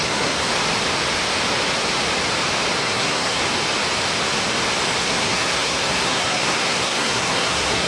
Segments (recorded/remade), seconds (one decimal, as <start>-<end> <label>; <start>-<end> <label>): 0.0-0.5 remade; 0.5-2.8 recorded; 2.8-3.4 remade; 3.4-5.0 recorded; 5.0-7.9 remade